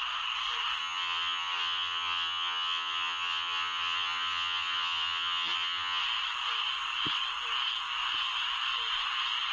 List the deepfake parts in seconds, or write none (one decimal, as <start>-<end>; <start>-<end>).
0.8-6.0